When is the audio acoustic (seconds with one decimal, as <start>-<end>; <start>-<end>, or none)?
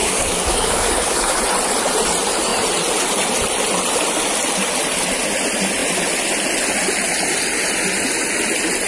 1.4-8.9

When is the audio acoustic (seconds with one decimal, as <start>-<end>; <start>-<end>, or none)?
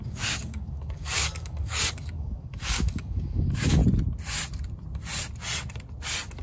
3.8-6.4